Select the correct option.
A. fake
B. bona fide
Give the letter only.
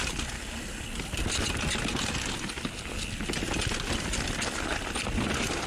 B